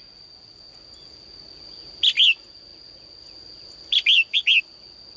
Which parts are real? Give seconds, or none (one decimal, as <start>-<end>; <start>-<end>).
0.0-5.2